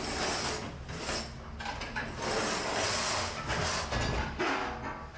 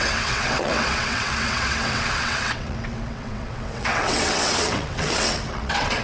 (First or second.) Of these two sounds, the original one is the first